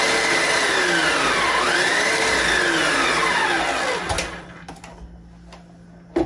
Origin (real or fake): real